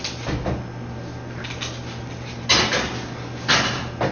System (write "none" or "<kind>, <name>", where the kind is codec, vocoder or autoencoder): none